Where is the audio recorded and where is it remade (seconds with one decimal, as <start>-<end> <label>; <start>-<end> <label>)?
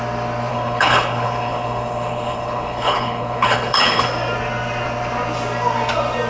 0.0-0.5 recorded; 0.5-4.0 remade; 4.0-6.3 recorded